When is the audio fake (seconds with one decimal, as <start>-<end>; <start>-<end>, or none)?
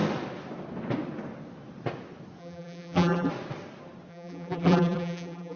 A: 2.4-3.3; 4.1-5.6